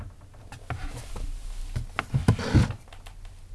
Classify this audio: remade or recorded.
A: recorded